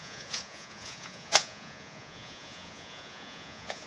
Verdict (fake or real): fake